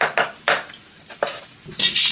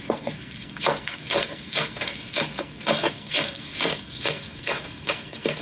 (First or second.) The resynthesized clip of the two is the second